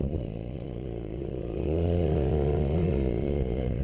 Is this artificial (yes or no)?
yes